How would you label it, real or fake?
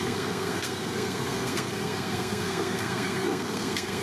fake